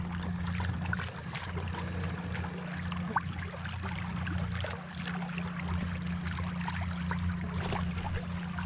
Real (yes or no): yes